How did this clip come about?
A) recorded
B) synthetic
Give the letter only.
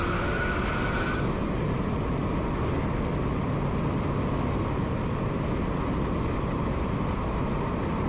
A